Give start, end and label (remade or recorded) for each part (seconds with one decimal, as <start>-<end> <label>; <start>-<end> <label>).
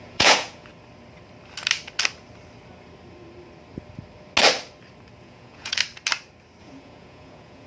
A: 0.0-0.7 remade; 0.7-5.2 recorded; 5.2-5.8 remade; 5.8-6.6 recorded; 6.6-7.7 remade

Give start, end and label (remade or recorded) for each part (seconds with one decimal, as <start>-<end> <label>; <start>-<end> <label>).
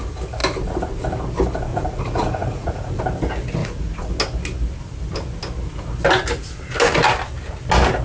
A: 0.0-1.7 recorded; 1.7-3.0 remade; 3.0-3.6 recorded; 3.6-4.1 remade; 4.1-8.0 recorded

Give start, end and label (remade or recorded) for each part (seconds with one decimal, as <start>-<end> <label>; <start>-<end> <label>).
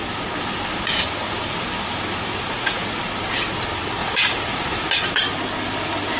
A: 0.0-2.3 recorded; 2.3-2.9 remade; 2.9-4.0 recorded; 4.0-4.9 remade; 4.9-6.2 recorded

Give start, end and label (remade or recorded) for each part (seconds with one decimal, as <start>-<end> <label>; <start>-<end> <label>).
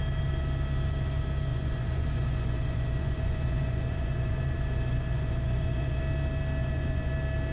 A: 0.0-1.5 recorded; 1.5-6.0 remade; 6.0-6.6 recorded; 6.6-7.1 remade; 7.1-7.5 recorded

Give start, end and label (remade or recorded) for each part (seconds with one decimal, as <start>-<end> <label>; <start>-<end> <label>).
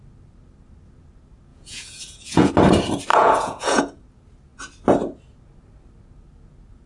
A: 0.0-1.5 recorded; 1.5-2.5 remade; 2.5-3.1 recorded; 3.1-3.8 remade; 3.8-6.9 recorded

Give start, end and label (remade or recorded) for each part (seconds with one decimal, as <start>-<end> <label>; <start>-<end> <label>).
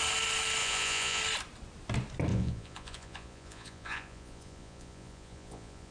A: 0.0-0.6 recorded; 0.6-1.2 remade; 1.2-2.3 recorded; 2.3-5.9 remade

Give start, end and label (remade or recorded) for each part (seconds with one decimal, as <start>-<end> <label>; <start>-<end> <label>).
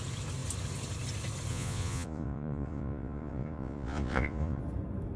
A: 0.0-1.5 recorded; 1.5-4.6 remade; 4.6-5.2 recorded